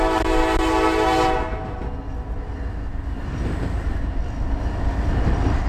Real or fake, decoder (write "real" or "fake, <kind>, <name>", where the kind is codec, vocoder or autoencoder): real